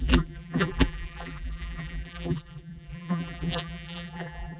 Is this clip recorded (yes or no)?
no